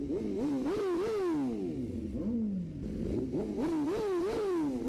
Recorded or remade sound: recorded